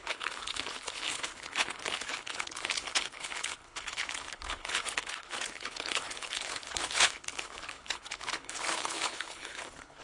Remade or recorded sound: remade